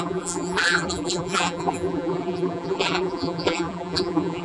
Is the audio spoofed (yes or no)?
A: yes